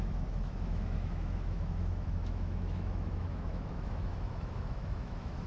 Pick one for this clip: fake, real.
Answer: fake